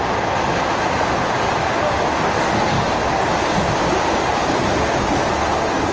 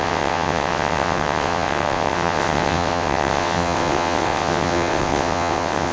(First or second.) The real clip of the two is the first